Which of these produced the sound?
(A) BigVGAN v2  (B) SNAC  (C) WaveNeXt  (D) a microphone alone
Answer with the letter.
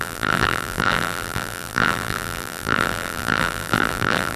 A